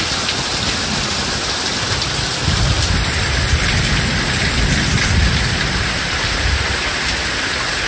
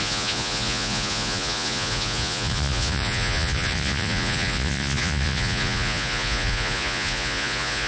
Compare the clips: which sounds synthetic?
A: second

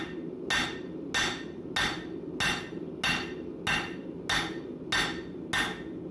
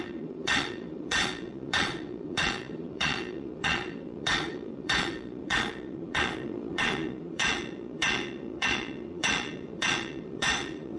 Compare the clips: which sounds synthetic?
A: second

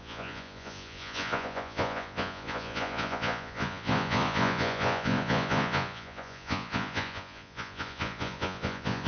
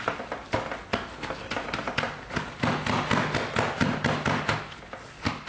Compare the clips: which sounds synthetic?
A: first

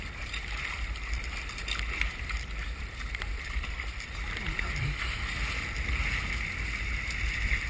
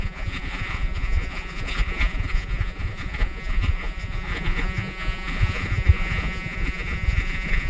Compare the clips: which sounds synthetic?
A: second